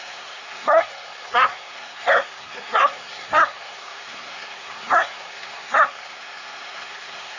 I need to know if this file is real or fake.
fake